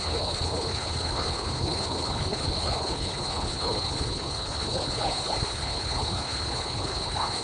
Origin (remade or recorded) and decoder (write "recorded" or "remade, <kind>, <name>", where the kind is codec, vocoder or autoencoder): remade, codec, HILCodec